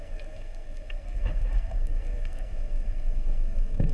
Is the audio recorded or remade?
remade